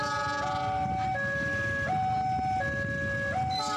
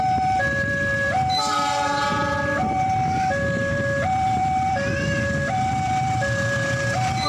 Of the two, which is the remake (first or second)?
second